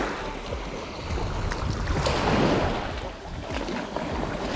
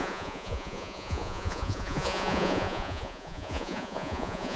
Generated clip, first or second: second